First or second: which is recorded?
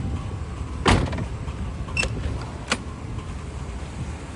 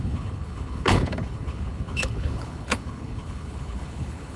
first